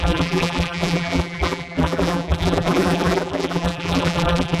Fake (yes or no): yes